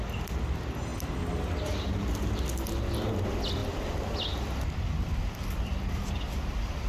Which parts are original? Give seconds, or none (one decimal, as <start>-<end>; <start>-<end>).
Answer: 0.0-6.9